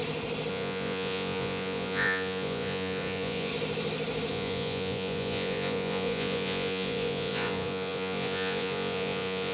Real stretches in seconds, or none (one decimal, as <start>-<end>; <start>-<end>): 0.0-0.5; 3.5-4.3